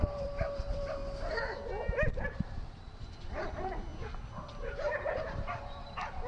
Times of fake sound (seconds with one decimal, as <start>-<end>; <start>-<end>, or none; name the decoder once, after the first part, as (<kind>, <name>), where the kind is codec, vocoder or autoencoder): 0.0-1.0 (vocoder, BigVGAN v2); 2.1-3.9; 5.2-6.3